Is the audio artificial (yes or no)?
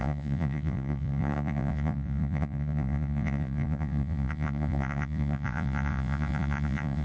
yes